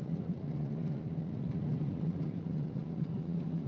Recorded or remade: remade